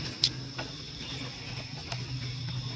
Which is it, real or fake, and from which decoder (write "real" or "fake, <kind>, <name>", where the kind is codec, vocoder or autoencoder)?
real